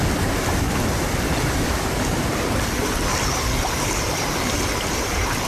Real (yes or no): yes